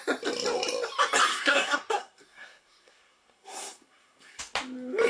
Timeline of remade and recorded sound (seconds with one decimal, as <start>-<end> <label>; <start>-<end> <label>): 0.0-1.3 recorded; 1.3-4.4 remade; 4.4-5.1 recorded